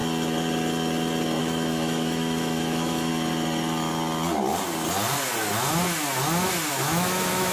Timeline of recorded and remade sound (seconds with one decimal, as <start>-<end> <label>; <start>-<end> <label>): 0.0-1.4 recorded; 1.4-3.1 remade; 3.1-6.7 recorded; 6.7-7.5 remade